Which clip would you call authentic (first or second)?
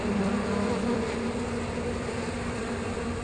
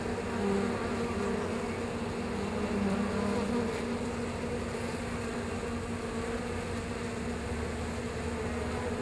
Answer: second